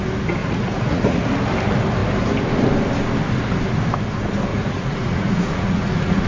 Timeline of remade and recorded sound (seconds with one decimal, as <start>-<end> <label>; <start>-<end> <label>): 0.0-0.4 recorded; 0.4-1.3 remade; 1.3-4.5 recorded; 4.5-6.3 remade